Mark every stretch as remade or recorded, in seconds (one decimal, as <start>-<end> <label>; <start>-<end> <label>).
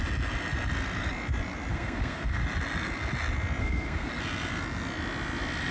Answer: 0.0-1.7 recorded; 1.7-2.4 remade; 2.4-3.6 recorded; 3.6-4.1 remade; 4.1-5.7 recorded